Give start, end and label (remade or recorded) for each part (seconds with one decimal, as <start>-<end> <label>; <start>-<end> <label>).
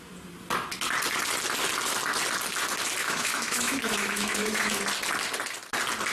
0.0-3.0 recorded; 3.0-4.8 remade; 4.8-6.1 recorded